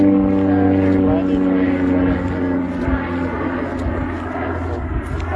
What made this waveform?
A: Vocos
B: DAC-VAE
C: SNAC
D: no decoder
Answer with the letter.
D